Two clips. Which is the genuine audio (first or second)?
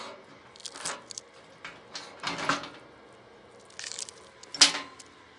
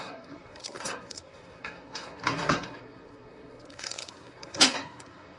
first